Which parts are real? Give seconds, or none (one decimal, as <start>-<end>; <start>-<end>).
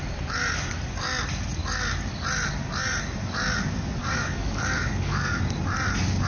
0.0-4.0; 5.4-6.3